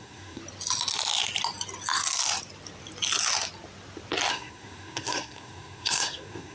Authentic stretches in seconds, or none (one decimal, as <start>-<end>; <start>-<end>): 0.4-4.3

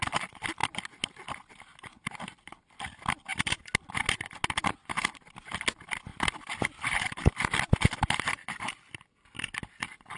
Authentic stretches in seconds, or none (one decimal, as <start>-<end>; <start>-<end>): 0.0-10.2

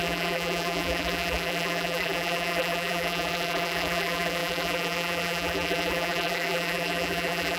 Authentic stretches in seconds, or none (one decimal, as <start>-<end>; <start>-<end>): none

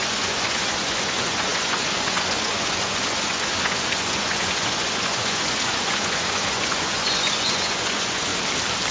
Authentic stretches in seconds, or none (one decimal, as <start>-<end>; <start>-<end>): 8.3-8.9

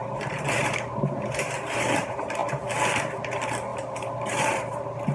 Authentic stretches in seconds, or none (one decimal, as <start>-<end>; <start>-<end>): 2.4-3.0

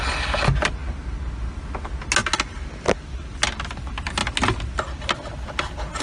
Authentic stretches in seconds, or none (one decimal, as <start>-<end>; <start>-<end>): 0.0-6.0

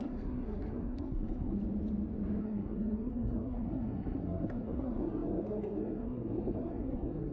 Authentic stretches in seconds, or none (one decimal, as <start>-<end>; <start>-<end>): 1.6-2.4

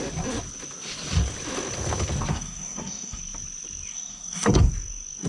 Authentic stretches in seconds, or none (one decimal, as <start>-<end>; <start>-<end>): 0.0-2.3; 3.2-3.9; 4.7-5.3